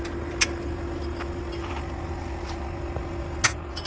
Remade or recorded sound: recorded